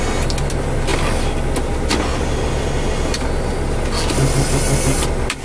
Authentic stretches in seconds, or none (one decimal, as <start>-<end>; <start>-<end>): 0.0-5.4